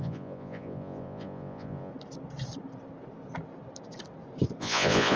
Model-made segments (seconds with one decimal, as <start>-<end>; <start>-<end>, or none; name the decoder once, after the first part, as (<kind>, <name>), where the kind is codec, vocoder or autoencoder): 0.0-1.9 (vocoder, Vocos); 4.6-5.2